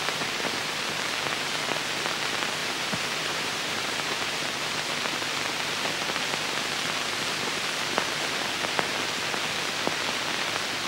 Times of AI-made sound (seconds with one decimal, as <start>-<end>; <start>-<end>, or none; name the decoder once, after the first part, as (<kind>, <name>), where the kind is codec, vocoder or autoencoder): 2.6-4.2 (vocoder, BigVGAN v2)